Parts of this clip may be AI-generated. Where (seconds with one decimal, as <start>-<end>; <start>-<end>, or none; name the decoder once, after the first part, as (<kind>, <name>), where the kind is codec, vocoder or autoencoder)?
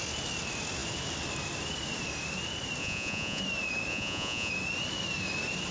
2.8-3.4 (vocoder, Vocos); 3.9-4.5